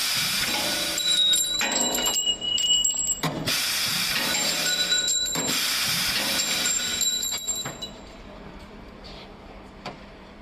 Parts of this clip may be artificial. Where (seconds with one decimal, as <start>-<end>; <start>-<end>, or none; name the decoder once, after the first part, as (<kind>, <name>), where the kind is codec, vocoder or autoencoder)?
1.0-10.4 (vocoder, BigVGAN v2)